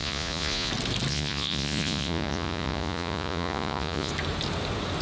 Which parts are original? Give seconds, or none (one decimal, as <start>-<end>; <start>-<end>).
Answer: 0.7-1.1; 4.1-5.0